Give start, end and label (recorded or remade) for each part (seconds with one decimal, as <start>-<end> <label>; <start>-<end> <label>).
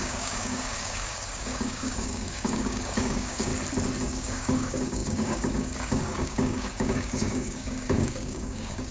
0.0-3.5 remade; 3.5-4.0 recorded; 4.0-8.9 remade